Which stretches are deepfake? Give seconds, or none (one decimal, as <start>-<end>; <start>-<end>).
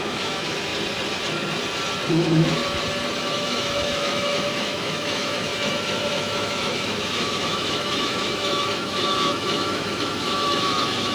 0.0-0.7; 2.1-2.6; 3.2-5.5; 6.1-11.1